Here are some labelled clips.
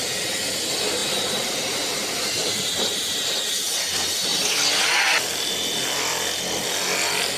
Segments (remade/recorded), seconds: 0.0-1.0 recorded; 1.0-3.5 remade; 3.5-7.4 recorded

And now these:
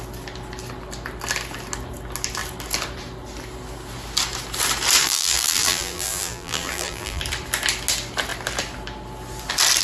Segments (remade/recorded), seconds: 0.0-5.0 recorded; 5.0-7.2 remade; 7.2-9.8 recorded

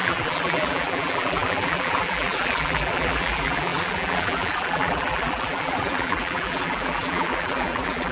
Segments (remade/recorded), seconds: 0.0-8.1 remade

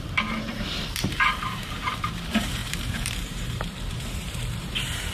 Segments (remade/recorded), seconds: 0.0-5.1 remade

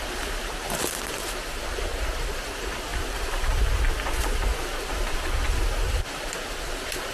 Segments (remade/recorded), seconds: 0.0-2.9 recorded; 2.9-3.8 remade; 3.8-4.5 recorded; 4.5-6.0 remade; 6.0-7.1 recorded